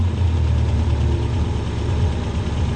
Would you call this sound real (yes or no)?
yes